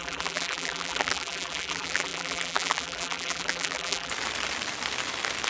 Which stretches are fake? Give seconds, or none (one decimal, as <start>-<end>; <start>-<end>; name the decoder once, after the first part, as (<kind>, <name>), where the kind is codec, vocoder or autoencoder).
0.0-4.1 (vocoder, BigVGAN v2)